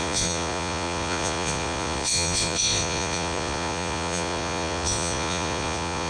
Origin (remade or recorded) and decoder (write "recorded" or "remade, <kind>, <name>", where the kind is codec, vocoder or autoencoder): remade, vocoder, Vocos